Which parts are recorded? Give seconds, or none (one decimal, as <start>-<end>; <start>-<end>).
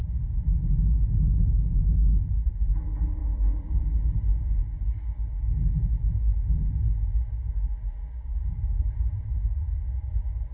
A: 0.0-10.5